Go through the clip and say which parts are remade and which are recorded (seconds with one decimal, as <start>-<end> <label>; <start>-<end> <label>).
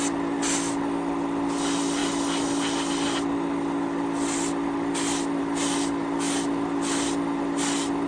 0.0-8.1 recorded